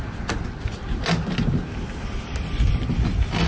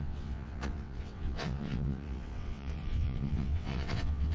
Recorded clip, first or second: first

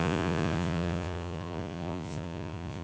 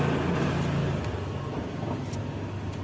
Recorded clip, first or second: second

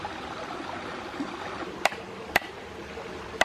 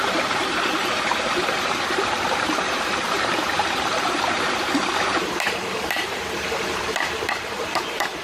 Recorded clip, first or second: first